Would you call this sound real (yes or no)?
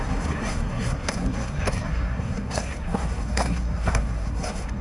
no